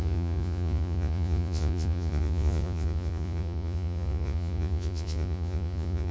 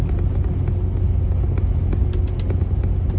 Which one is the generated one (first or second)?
first